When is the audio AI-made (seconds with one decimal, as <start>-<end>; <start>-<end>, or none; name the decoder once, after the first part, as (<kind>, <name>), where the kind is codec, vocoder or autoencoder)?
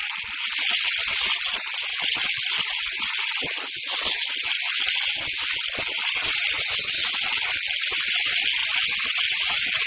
none